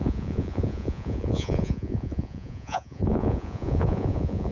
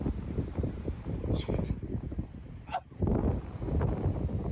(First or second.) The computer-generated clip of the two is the first